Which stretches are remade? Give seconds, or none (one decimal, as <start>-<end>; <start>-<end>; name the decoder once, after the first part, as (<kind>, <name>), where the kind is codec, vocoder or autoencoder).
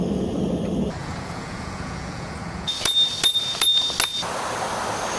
1.0-2.7 (vocoder, Vocos)